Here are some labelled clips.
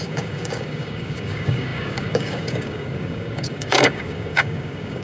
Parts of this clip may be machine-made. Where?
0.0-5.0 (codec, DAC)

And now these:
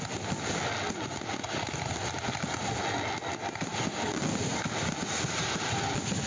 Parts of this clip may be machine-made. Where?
none

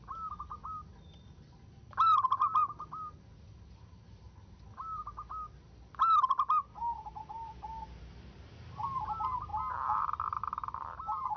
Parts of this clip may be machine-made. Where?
none